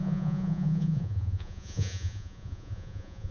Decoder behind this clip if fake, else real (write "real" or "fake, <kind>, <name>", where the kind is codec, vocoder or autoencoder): fake, vocoder, Vocos